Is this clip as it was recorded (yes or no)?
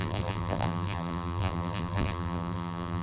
no